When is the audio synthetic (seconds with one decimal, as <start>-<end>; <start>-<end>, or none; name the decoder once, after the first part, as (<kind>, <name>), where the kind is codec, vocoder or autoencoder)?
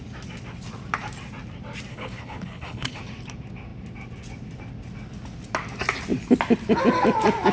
1.9-3.0 (codec, HILCodec)